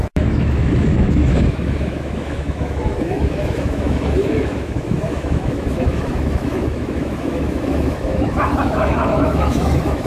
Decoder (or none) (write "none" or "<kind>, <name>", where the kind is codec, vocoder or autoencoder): autoencoder, DAC-VAE